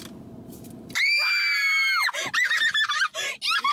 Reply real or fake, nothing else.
real